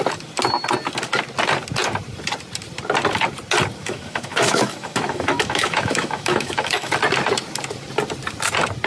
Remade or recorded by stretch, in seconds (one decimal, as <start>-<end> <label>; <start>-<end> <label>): 0.0-3.8 recorded; 3.8-6.9 remade; 6.9-8.9 recorded